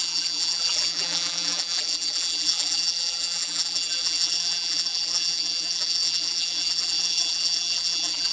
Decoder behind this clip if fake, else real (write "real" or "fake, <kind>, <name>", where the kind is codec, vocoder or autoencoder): fake, vocoder, BigVGAN v2